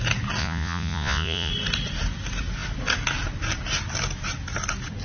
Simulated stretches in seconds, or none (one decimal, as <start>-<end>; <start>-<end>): 0.4-1.5